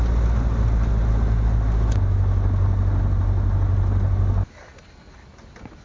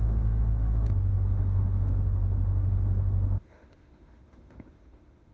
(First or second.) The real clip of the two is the first